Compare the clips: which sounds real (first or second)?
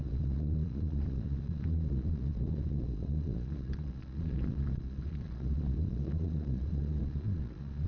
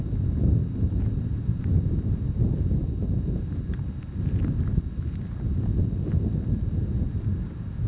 second